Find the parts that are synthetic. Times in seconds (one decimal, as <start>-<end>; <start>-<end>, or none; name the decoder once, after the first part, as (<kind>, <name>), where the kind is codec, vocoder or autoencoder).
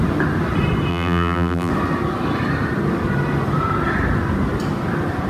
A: 0.9-1.7 (vocoder, BigVGAN v2)